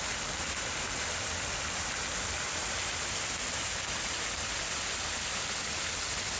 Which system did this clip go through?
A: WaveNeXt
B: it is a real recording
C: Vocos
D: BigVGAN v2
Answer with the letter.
B